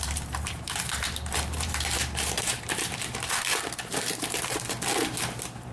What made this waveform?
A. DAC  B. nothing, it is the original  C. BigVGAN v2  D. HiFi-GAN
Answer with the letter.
C